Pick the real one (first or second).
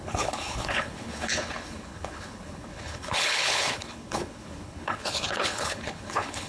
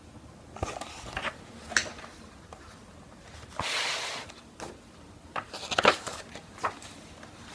second